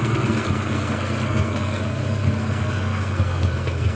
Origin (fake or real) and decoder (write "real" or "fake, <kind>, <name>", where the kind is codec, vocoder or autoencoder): fake, codec, SNAC